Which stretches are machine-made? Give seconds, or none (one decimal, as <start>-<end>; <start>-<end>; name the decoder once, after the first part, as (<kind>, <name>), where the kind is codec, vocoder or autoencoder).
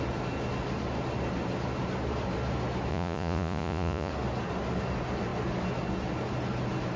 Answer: 2.9-4.1 (vocoder, Vocos)